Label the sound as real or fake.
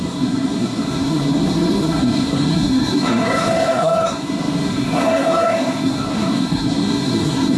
fake